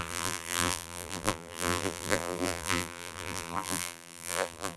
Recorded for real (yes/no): no